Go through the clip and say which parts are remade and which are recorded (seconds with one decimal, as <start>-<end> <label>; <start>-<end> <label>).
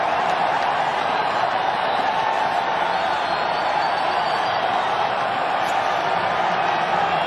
0.0-0.9 recorded; 0.9-2.1 remade; 2.1-2.7 recorded; 2.7-5.7 remade; 5.7-7.3 recorded